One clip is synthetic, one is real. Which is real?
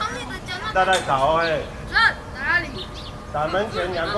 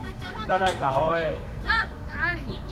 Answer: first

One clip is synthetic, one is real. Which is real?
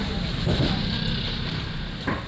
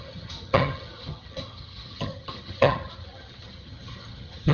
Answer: first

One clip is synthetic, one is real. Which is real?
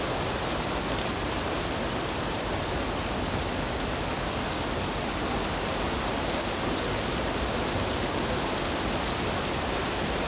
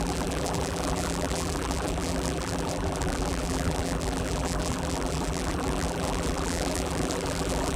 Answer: first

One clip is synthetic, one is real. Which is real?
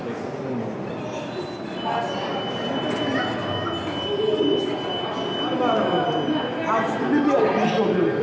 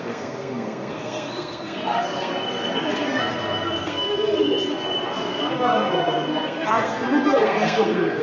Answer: first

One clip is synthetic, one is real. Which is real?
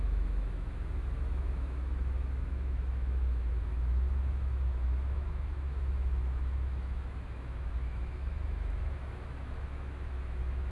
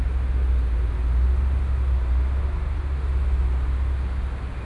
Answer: second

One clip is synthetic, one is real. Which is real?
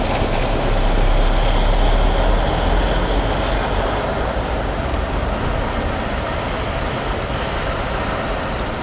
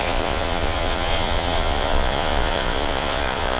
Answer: first